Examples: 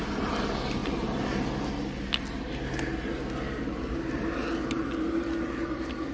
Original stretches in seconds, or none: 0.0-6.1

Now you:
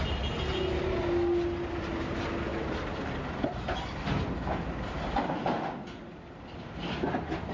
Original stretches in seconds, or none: 0.0-7.5

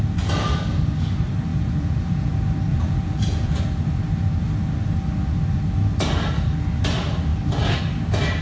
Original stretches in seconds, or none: 0.0-1.5; 2.3-2.7; 3.6-8.4

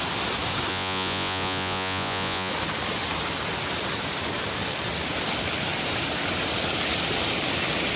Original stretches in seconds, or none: 0.0-0.7; 2.5-8.0

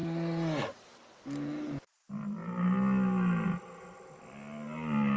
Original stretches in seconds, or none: 0.0-5.2

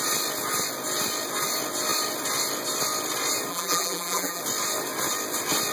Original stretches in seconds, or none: 0.0-3.5; 4.4-5.7

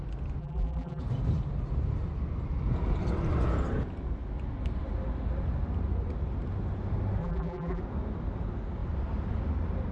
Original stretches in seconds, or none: 0.0-0.4; 1.0-7.2; 7.8-9.9